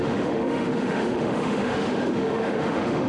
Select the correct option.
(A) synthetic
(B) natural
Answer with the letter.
A